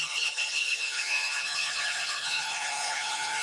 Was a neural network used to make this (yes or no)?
yes